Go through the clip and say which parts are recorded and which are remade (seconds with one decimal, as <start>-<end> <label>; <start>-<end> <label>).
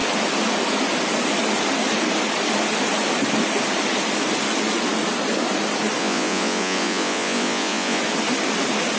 0.0-6.0 recorded; 6.0-8.0 remade; 8.0-9.0 recorded